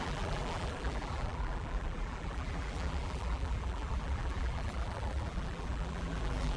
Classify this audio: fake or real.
fake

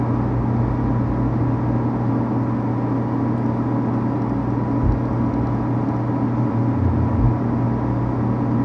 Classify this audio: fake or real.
real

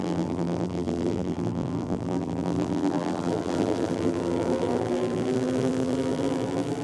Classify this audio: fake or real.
fake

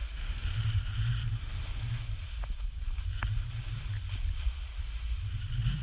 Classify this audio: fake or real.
real